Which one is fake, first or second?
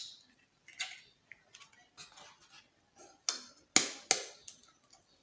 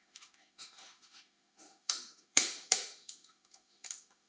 second